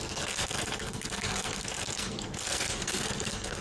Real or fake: fake